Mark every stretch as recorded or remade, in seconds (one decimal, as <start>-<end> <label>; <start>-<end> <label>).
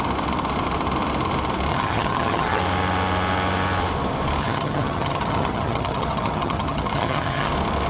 0.0-1.7 recorded; 1.7-2.6 remade; 2.6-4.4 recorded; 4.4-7.5 remade; 7.5-7.9 recorded